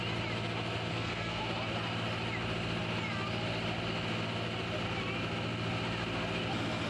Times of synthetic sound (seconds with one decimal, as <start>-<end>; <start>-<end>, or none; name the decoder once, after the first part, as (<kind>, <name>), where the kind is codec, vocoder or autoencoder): 0.9-1.4 (codec, SNAC)